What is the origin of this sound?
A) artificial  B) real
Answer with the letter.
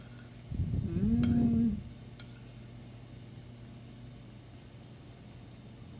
B